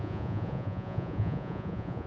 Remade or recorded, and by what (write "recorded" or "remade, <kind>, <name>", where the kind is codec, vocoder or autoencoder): remade, vocoder, Vocos